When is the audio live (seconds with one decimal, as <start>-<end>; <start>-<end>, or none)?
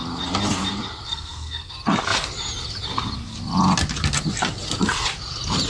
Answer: 0.0-1.1; 1.7-5.7